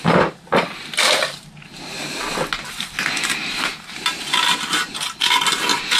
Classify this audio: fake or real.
real